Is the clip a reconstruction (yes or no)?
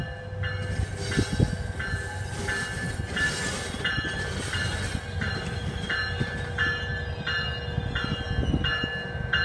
no